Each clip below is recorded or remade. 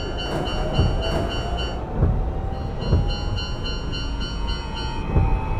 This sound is recorded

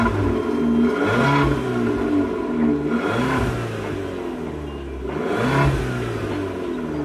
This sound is recorded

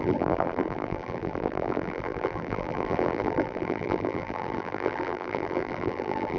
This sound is remade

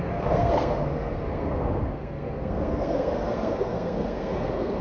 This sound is remade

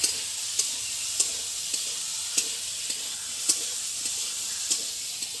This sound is recorded